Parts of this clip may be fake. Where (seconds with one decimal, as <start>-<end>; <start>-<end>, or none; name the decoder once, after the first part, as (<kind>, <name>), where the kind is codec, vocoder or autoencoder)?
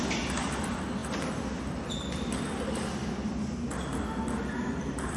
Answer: none